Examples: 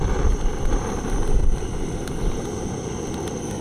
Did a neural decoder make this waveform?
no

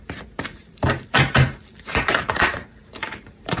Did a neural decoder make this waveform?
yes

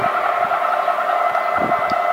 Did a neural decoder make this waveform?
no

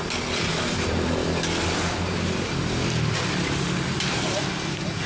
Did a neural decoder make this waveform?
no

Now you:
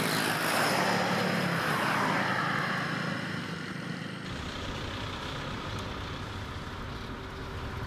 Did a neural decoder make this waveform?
no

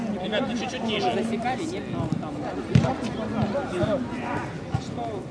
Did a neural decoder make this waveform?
no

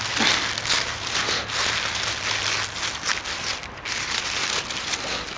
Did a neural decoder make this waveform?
no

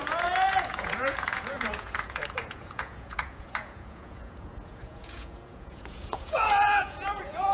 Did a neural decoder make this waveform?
yes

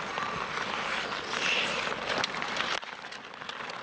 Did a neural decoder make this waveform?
no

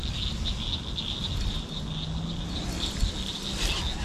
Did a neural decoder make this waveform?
no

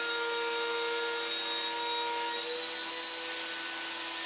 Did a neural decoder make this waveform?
no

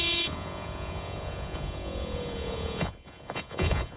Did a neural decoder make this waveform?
yes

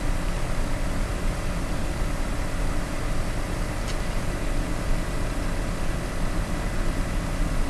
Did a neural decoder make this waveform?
no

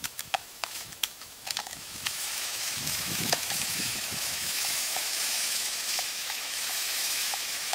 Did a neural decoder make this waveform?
yes